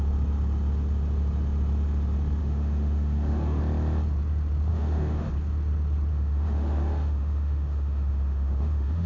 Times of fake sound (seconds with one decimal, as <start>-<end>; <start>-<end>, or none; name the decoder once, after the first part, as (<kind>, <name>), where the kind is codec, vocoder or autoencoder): 2.4-3.6 (autoencoder, DAC-VAE); 4.7-5.3; 6.1-9.1